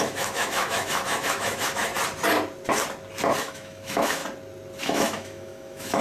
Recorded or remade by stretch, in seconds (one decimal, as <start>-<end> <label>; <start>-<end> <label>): 0.0-1.9 remade; 1.9-3.4 recorded; 3.4-4.2 remade; 4.2-4.8 recorded; 4.8-6.0 remade